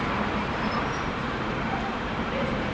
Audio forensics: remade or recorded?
remade